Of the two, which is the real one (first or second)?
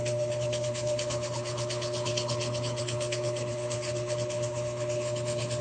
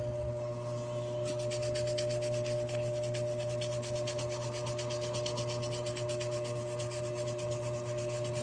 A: second